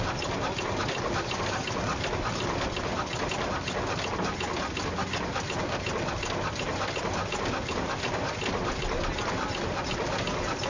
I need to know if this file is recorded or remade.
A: recorded